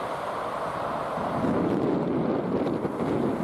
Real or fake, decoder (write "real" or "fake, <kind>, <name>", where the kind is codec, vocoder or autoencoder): real